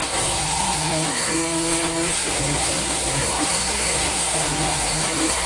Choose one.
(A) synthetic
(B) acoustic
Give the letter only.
A